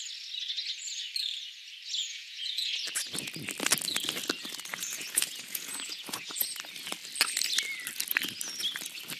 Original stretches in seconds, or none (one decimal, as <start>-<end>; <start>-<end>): 0.0-2.0; 2.7-4.7; 6.5-9.2